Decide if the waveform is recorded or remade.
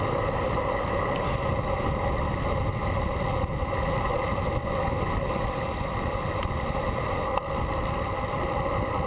recorded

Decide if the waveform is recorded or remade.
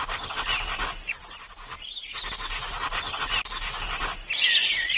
recorded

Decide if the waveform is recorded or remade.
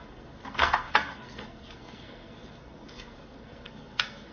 remade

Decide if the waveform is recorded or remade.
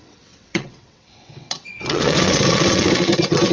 remade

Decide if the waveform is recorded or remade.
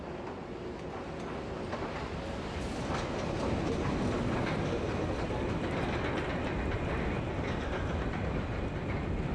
recorded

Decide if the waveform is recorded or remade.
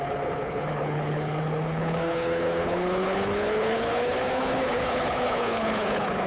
remade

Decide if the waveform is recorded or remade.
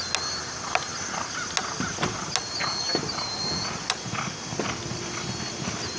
recorded